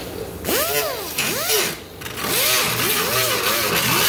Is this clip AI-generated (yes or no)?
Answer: no